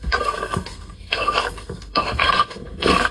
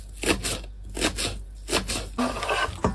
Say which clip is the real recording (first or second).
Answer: second